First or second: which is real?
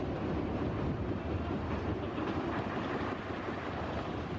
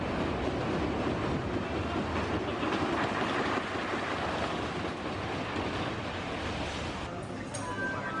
second